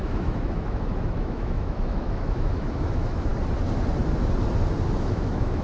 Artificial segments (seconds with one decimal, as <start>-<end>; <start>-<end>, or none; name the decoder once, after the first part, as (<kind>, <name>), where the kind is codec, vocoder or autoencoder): 0.0-3.3 (autoencoder, DAC-VAE); 5.0-5.6